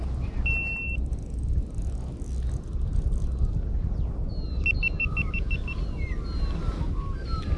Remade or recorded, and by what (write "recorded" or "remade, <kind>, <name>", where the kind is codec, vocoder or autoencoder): recorded